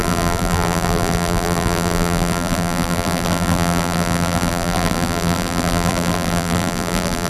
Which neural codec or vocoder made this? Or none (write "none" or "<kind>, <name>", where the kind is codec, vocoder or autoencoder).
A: vocoder, BigVGAN v2